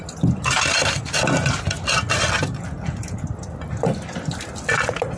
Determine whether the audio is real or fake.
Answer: real